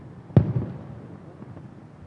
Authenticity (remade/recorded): recorded